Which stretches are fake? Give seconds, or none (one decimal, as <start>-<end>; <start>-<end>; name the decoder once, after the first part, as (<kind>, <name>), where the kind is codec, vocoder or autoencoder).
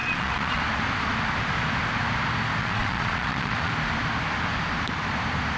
0.0-0.6 (vocoder, Vocos); 2.6-3.7